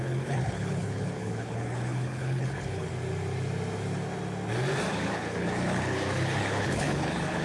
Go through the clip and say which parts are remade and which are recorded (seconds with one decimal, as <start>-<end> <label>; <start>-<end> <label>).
0.0-2.9 remade; 2.9-4.9 recorded; 4.9-7.4 remade

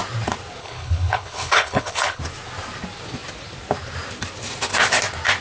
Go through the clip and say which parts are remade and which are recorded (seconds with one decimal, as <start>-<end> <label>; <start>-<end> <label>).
0.0-0.6 recorded; 0.6-2.2 remade; 2.2-5.4 recorded

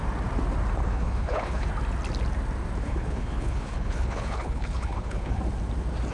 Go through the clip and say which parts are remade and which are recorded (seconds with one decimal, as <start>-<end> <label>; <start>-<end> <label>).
0.0-0.8 recorded; 0.8-1.7 remade; 1.7-2.8 recorded; 2.8-5.4 remade; 5.4-6.1 recorded

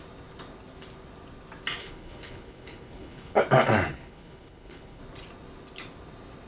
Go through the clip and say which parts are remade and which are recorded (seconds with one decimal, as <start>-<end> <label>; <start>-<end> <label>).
0.0-1.8 recorded; 1.8-3.4 remade; 3.4-3.9 recorded; 3.9-5.0 remade; 5.0-6.5 recorded

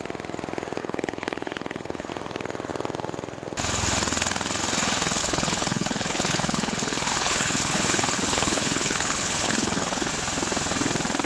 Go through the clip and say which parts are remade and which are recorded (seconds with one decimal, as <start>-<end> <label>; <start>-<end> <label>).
0.0-0.8 recorded; 0.8-2.1 remade; 2.1-5.2 recorded; 5.2-10.1 remade; 10.1-11.3 recorded

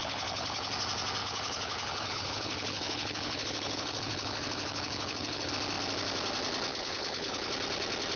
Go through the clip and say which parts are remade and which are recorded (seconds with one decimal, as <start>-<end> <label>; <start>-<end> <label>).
0.0-0.7 remade; 0.7-1.2 recorded; 1.2-5.5 remade; 5.5-6.7 recorded; 6.7-7.5 remade; 7.5-8.2 recorded

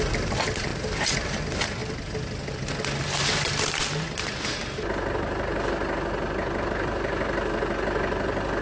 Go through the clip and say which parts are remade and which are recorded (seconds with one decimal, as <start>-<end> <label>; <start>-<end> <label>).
0.0-8.6 recorded